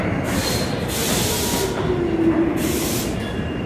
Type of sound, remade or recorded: recorded